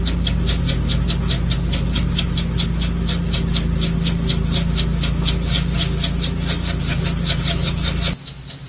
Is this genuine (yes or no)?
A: yes